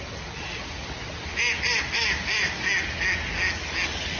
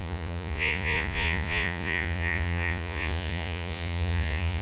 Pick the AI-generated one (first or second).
second